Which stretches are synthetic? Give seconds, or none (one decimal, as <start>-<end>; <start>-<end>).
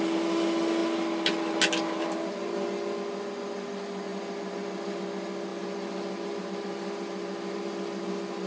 none